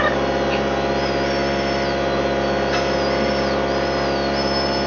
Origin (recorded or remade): recorded